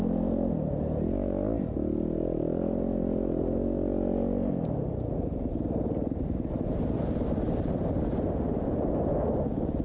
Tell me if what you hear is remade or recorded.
recorded